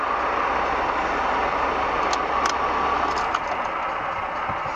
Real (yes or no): yes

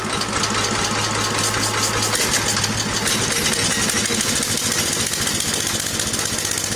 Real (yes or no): yes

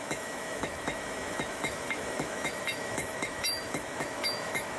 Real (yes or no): no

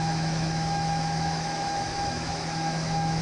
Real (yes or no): no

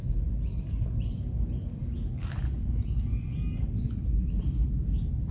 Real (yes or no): yes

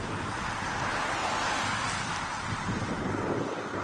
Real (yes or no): yes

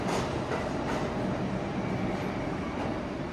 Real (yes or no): yes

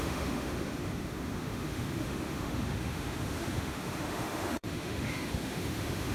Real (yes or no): no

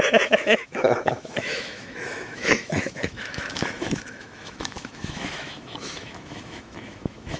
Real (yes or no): no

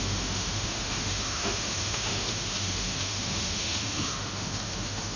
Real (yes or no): no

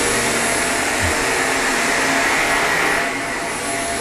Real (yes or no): yes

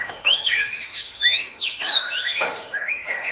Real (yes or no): no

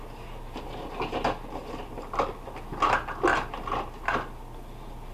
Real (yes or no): yes